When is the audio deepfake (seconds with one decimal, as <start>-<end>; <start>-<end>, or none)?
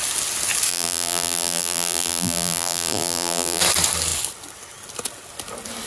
0.7-3.6